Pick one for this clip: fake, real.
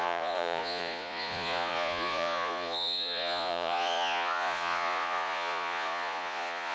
fake